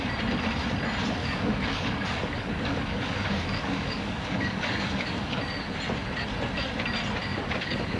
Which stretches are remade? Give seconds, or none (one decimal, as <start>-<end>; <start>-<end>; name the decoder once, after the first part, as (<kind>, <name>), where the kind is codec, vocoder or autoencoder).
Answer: 1.2-5.4 (codec, DAC); 7.3-8.0